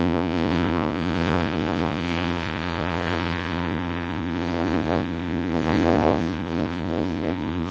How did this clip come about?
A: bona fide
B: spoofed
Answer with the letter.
B